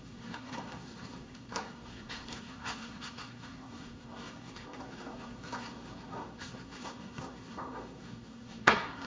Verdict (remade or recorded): remade